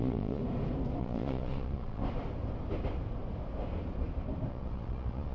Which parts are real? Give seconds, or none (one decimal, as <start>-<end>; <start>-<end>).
0.4-1.0; 2.0-4.5